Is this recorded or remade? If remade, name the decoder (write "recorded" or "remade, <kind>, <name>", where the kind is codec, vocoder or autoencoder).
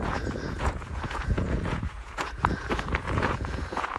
remade, vocoder, Vocos